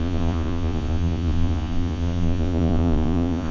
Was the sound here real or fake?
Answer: fake